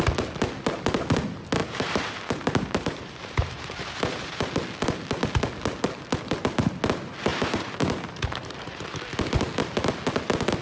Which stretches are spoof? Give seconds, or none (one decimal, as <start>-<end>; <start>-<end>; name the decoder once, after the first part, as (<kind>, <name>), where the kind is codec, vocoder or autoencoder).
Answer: 1.6-4.5 (vocoder, BigVGAN v2); 7.3-9.0